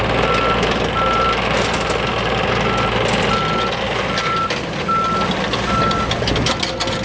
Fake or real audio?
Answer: real